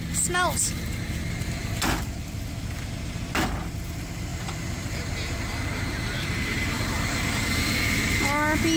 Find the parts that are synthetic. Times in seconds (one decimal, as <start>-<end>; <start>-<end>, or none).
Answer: 4.3-7.8

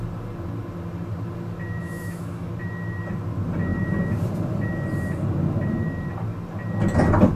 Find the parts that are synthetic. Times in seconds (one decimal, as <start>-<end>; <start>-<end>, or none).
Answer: 1.8-2.5

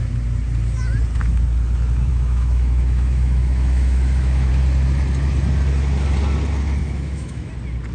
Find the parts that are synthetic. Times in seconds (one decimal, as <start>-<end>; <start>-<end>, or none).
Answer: 2.1-4.5; 6.8-7.5

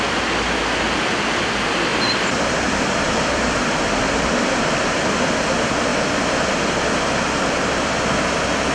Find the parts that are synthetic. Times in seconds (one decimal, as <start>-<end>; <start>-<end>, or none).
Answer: 1.9-5.2

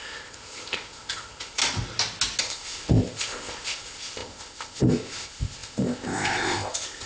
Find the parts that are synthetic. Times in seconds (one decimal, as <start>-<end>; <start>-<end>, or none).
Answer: 0.0-1.6; 2.4-7.1

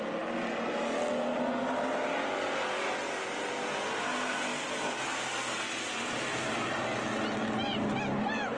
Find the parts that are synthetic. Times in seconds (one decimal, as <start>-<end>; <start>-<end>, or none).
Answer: none

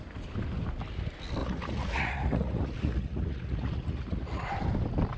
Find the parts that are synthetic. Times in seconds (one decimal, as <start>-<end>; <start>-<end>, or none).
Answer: 1.4-4.5